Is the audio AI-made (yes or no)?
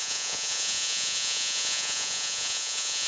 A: yes